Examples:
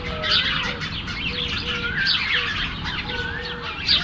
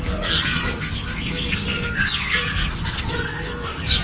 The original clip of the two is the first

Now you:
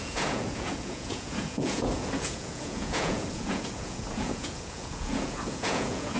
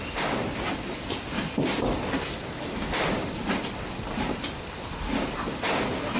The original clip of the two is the second